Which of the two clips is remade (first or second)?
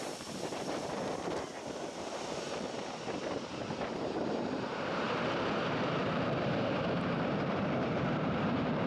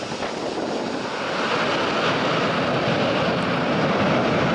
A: first